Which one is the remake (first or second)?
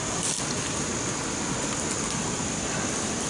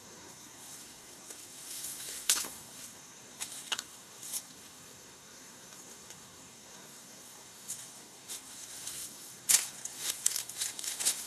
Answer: second